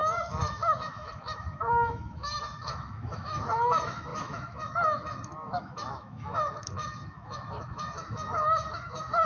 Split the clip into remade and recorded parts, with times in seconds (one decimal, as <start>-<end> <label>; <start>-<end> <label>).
0.0-9.3 remade